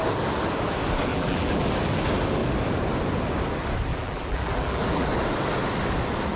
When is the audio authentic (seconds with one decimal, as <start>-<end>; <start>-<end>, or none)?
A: 0.0-1.1; 1.7-3.9; 5.1-6.4